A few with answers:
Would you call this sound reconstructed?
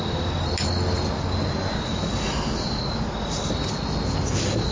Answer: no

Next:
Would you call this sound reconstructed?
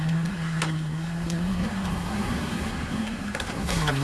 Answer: yes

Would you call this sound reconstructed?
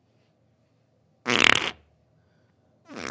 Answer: no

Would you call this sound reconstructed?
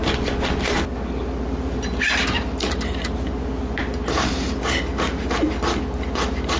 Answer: yes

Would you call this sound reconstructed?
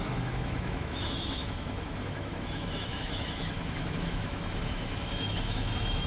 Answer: yes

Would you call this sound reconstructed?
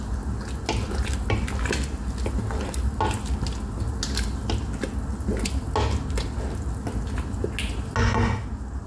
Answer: no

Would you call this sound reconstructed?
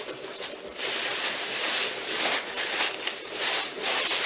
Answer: no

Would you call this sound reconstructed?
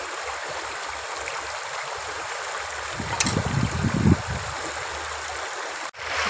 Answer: no